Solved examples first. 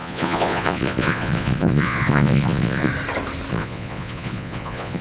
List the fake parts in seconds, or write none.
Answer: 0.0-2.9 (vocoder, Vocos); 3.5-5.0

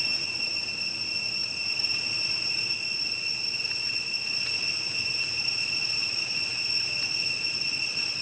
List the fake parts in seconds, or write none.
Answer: none

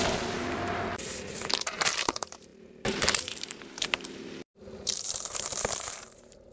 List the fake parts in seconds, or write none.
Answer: 0.0-6.5 (vocoder, BigVGAN v2)

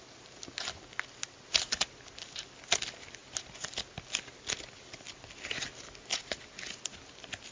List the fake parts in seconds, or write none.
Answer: none

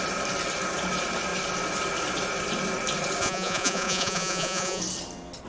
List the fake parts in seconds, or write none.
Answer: 3.2-4.8 (vocoder, Vocos)